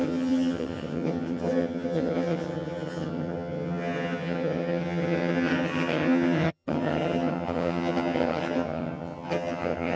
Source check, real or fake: fake